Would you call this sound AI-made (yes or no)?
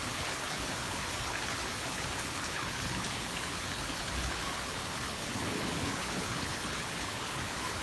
yes